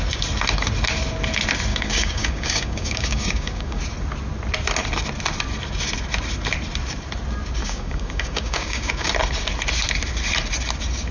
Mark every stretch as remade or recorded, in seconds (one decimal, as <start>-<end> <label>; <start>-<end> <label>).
0.0-1.7 recorded; 1.7-3.8 remade; 3.8-7.6 recorded; 7.6-9.1 remade; 9.1-11.1 recorded

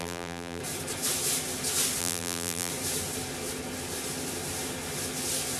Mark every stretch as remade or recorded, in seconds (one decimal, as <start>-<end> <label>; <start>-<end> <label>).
0.0-0.6 remade; 0.6-2.0 recorded; 2.0-2.7 remade; 2.7-5.6 recorded